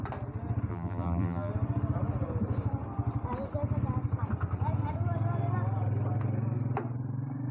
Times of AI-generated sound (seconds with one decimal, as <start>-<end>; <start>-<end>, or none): 0.7-1.5